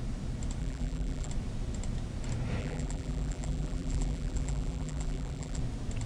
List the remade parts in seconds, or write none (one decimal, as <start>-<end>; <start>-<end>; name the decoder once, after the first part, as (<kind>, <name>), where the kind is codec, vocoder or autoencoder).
0.6-1.3 (vocoder, BigVGAN v2); 2.6-5.6